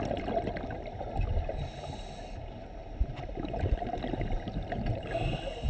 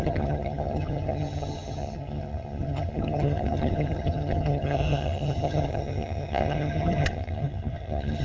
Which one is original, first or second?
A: first